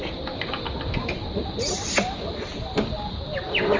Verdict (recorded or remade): recorded